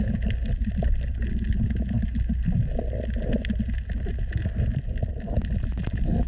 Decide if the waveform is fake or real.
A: real